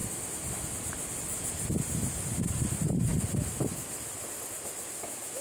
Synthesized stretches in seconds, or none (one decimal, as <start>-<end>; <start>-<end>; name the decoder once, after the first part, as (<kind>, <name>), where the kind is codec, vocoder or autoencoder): none